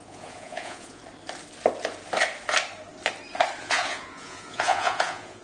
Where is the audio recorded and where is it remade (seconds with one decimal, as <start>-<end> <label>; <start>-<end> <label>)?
0.0-1.0 remade; 1.0-3.6 recorded; 3.6-5.4 remade